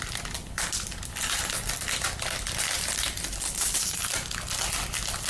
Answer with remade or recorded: recorded